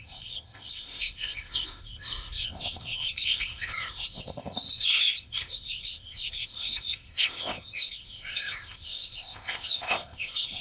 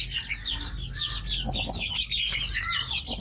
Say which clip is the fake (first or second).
first